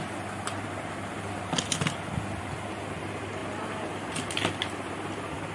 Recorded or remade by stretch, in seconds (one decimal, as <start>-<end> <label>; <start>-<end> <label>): 0.0-5.5 recorded